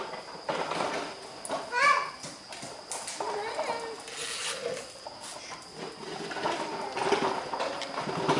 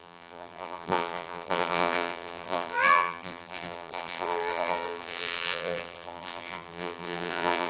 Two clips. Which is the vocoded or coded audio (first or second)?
second